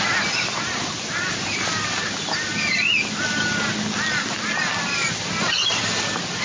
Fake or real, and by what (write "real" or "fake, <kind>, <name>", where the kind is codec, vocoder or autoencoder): real